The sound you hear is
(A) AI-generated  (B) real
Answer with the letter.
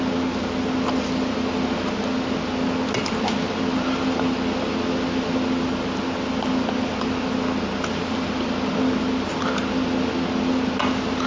B